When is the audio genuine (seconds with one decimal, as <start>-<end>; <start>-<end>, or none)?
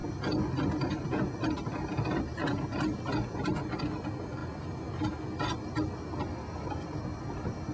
0.0-7.7